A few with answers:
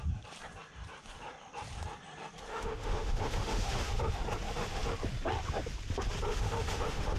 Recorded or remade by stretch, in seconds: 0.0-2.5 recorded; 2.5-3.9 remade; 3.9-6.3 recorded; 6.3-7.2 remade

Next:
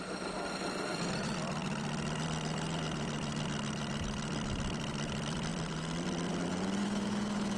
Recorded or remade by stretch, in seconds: 0.0-6.8 recorded; 6.8-7.6 remade

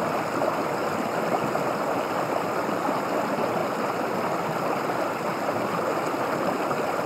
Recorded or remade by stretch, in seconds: 0.0-7.1 recorded

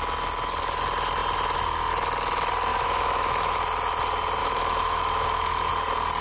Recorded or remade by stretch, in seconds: 0.0-2.7 recorded; 2.7-3.6 remade; 3.6-4.4 recorded; 4.4-5.7 remade; 5.7-6.2 recorded

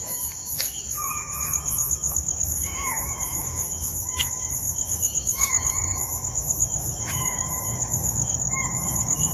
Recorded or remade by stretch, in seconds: 0.0-9.3 remade

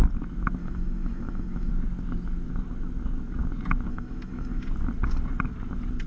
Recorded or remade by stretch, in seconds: 0.0-0.6 recorded; 0.6-1.7 remade; 1.7-3.9 recorded; 3.9-4.6 remade; 4.6-6.1 recorded

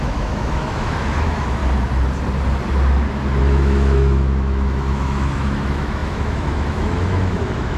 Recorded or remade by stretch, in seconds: 0.0-1.6 remade; 1.6-3.4 recorded; 3.4-7.8 remade